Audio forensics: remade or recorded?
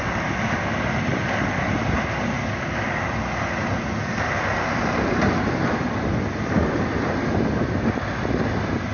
recorded